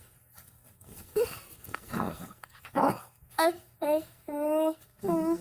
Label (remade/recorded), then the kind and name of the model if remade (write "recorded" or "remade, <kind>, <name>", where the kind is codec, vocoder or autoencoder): remade, codec, SNAC